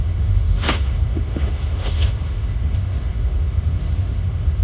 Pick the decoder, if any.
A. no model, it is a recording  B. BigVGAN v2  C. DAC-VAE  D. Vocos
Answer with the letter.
C